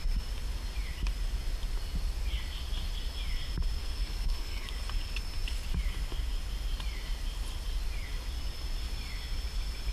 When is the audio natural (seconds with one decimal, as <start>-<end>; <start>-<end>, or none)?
0.0-3.8; 4.7-9.9